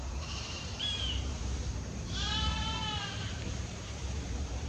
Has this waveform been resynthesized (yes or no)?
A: yes